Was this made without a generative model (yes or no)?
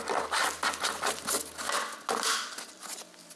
yes